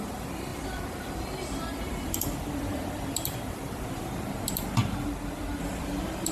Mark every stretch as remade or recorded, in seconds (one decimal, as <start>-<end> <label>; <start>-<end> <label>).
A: 0.0-6.3 remade